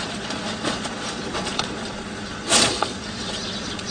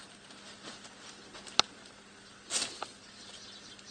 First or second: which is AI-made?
first